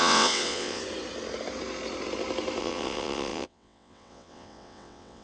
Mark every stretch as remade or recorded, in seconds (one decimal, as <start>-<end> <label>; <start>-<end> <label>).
0.0-0.8 remade; 0.8-2.6 recorded; 2.6-5.2 remade